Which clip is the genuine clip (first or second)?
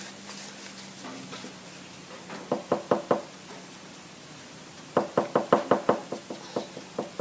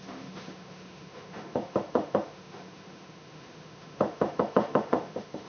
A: first